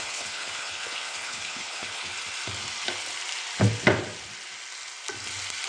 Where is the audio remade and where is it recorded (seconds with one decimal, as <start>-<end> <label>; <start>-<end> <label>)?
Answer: 0.0-2.1 remade; 2.1-5.7 recorded